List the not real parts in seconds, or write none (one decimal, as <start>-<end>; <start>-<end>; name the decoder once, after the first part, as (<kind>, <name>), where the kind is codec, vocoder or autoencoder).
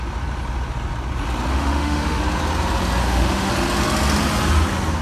1.5-2.2 (autoencoder, DAC-VAE); 3.0-3.5